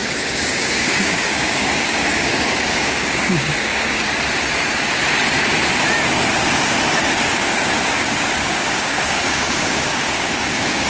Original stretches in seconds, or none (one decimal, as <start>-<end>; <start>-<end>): 4.1-7.0